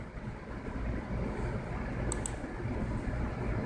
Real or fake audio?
real